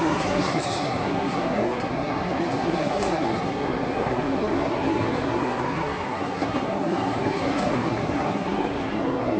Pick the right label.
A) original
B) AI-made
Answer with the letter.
B